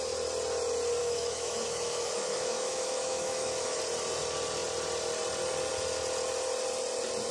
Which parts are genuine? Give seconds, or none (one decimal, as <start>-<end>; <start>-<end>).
0.0-1.0; 3.8-7.3